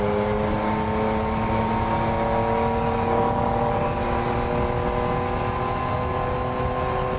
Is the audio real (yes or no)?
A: yes